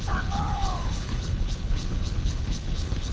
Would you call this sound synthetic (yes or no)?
yes